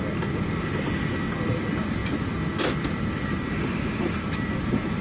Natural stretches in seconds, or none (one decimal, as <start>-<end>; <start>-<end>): 0.0-1.5; 2.0-3.2